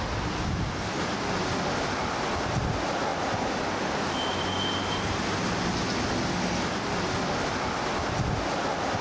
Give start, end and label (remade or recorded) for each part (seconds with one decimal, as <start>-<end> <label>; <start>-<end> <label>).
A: 0.0-9.0 recorded